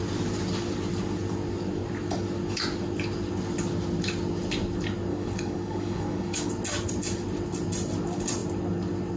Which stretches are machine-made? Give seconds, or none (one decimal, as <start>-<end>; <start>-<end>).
5.1-6.5